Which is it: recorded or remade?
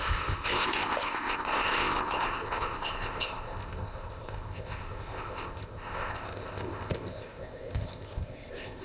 remade